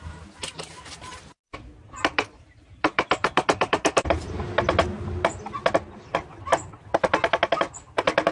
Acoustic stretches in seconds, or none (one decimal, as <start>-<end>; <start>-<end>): 0.0-2.1; 4.2-8.3